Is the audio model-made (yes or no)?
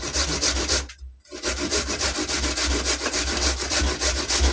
no